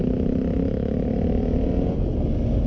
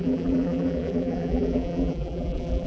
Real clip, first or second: first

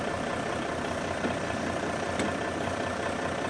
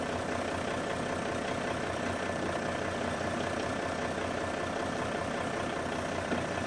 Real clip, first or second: second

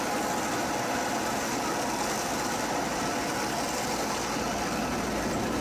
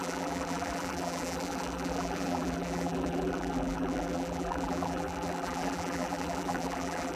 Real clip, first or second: first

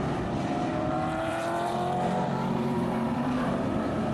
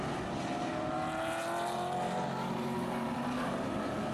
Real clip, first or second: second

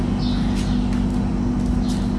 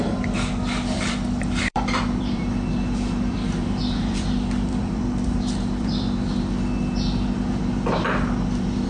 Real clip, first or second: first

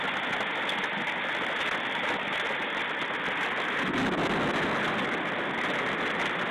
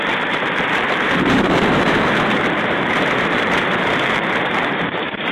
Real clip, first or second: first